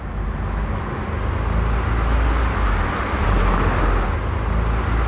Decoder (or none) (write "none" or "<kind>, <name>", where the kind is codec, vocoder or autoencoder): none